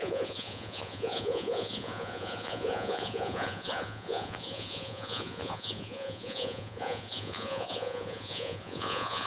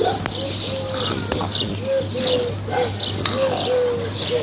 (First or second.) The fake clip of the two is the first